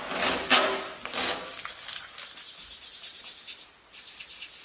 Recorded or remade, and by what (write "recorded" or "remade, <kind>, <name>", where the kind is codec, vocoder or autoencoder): recorded